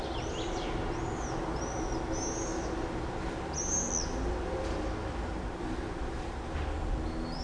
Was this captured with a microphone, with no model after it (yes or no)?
yes